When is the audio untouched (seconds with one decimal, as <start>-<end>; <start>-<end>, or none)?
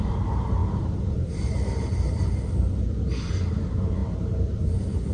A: none